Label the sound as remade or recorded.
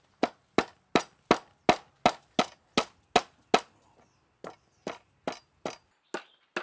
recorded